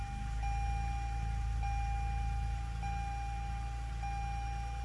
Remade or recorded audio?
recorded